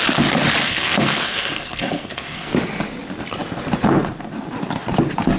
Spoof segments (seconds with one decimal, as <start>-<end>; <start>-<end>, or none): 0.6-2.5